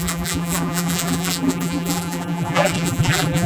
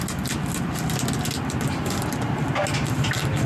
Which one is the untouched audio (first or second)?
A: second